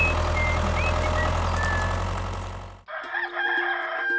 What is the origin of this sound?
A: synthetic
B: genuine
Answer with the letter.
B